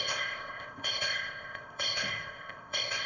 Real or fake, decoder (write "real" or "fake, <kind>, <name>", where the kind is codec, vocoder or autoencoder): fake, codec, ZipCodec